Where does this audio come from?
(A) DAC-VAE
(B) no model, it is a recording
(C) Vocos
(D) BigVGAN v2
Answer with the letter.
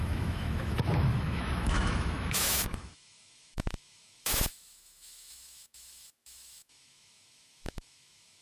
A